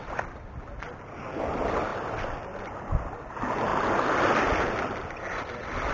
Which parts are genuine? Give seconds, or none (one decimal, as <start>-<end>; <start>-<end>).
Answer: 0.0-5.9